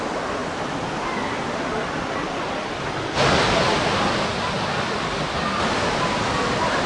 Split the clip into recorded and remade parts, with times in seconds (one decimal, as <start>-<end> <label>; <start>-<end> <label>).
0.0-6.9 recorded